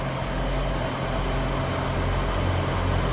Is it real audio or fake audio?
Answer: real